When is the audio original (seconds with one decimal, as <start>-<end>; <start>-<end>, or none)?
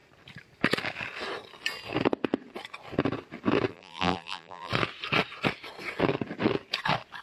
0.0-3.7; 4.7-7.2